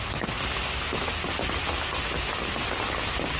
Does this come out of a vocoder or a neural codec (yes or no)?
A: no